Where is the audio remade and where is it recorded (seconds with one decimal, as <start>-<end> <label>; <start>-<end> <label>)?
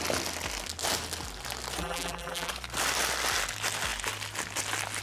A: 0.0-1.8 recorded; 1.8-2.5 remade; 2.5-5.0 recorded